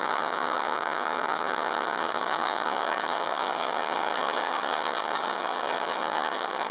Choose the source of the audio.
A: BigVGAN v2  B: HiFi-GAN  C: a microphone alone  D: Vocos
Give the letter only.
B